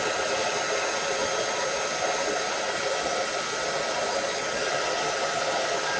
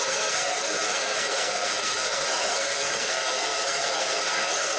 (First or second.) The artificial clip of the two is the second